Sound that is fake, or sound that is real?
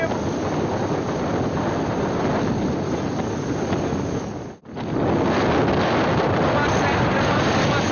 real